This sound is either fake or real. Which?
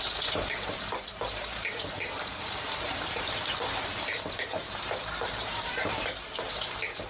fake